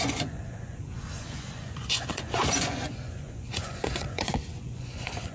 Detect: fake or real fake